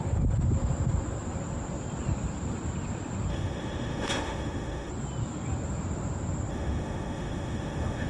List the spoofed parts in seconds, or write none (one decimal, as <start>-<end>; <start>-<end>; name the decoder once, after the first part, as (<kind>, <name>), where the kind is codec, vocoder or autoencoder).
3.3-4.9 (autoencoder, DAC-VAE); 6.5-8.1